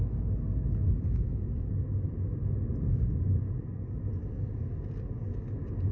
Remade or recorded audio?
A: recorded